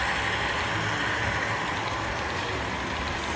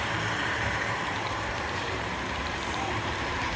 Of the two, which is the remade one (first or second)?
second